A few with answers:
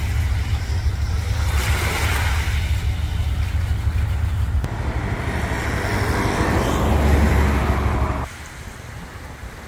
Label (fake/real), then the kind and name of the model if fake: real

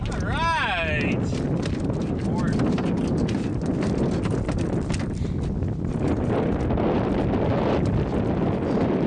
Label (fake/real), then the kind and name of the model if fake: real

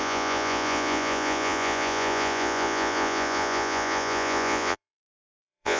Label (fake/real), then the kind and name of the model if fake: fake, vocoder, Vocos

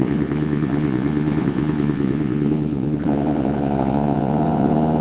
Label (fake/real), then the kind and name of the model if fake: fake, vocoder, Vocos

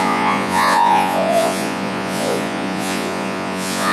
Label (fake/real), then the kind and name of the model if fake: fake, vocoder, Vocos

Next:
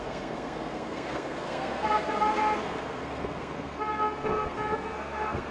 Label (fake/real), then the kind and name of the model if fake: fake, codec, SNAC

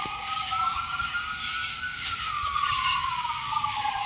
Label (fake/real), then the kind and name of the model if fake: fake, codec, DAC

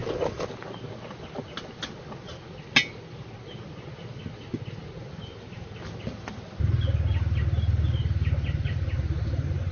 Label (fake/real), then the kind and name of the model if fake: real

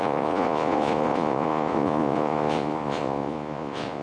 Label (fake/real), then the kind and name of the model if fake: fake, vocoder, Vocos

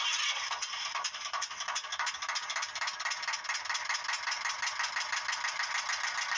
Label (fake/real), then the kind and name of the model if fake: real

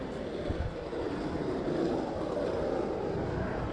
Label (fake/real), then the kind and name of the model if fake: real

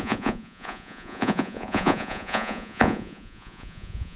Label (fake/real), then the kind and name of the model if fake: fake, vocoder, Vocos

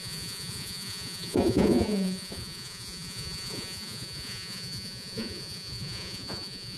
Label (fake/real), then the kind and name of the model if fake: fake, vocoder, Vocos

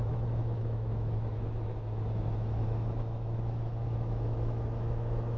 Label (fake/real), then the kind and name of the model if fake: fake, autoencoder, DAC-VAE